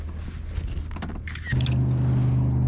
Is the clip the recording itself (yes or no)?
yes